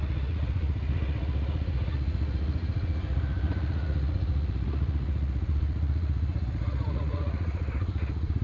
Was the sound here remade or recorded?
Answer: remade